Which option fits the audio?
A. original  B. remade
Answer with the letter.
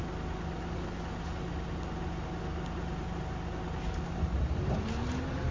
A